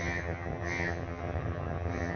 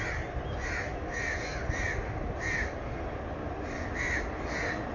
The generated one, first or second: first